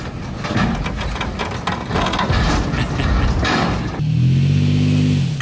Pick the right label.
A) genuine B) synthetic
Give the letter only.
A